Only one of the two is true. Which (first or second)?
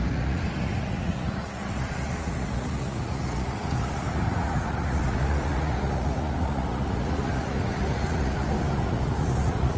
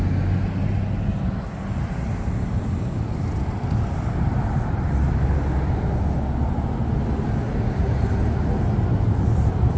second